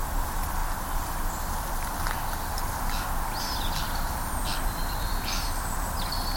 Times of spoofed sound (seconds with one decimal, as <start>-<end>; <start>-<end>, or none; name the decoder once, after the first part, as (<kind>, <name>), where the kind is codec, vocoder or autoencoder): none